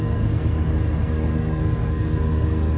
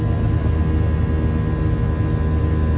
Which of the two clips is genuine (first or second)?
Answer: second